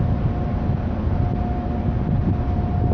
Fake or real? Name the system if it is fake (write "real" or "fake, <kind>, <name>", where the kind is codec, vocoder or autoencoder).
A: real